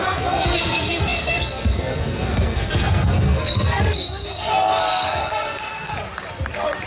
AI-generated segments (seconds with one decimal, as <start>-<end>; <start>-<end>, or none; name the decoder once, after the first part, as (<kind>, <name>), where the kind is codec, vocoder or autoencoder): 0.0-5.9 (codec, SNAC)